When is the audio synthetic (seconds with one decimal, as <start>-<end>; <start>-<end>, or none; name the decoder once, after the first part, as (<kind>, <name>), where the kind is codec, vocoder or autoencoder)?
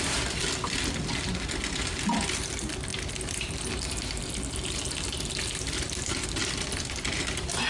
none